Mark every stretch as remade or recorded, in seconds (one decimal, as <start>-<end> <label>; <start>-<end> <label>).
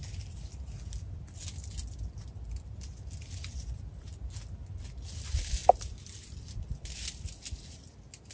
0.0-8.3 recorded